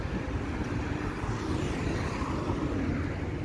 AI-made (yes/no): no